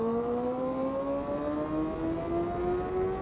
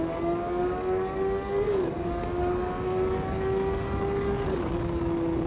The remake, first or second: second